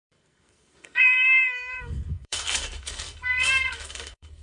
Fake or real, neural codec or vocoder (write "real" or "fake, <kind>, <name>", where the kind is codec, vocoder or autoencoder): fake, codec, SNAC